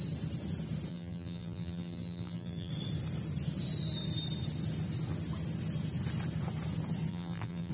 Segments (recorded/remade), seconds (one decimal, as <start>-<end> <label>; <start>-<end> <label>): 0.0-0.9 recorded; 0.9-2.7 remade; 2.7-7.1 recorded; 7.1-7.7 remade